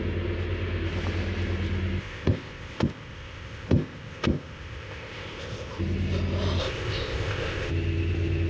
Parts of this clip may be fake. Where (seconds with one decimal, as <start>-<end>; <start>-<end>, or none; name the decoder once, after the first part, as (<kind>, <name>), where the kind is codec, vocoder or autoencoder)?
2.0-5.8 (codec, ZipCodec); 6.6-7.7